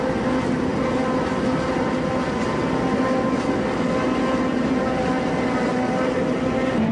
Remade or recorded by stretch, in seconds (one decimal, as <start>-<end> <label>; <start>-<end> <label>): 0.0-6.9 recorded